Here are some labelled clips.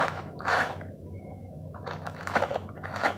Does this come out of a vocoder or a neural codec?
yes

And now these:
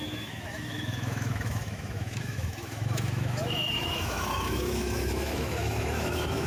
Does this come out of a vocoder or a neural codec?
yes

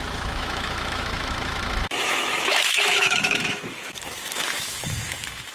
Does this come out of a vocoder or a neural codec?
yes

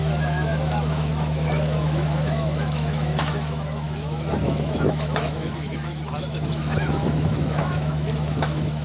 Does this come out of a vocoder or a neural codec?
yes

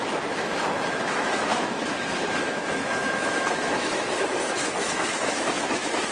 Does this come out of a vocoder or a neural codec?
yes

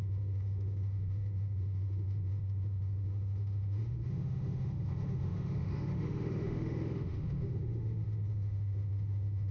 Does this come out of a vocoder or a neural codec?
yes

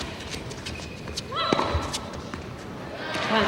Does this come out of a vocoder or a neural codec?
no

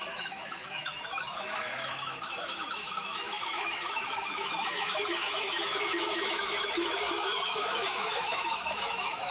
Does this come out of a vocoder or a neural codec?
yes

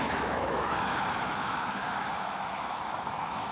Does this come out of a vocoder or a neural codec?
yes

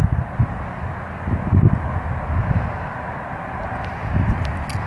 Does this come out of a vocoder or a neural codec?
no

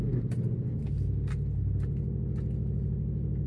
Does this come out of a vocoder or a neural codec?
no